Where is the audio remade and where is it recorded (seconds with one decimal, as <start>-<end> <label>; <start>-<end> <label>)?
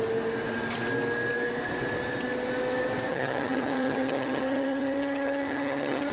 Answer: 0.0-3.1 recorded; 3.1-6.1 remade